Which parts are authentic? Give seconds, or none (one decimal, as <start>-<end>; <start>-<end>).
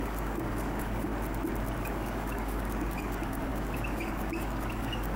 1.1-1.8